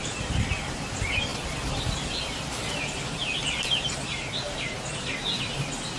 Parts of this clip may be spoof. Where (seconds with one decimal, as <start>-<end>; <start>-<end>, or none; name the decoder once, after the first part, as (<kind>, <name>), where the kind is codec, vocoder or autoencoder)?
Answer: none